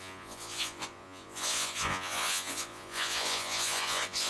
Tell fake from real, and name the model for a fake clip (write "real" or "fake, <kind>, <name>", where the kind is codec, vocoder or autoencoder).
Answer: fake, vocoder, Vocos